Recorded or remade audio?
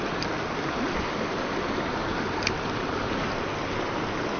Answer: recorded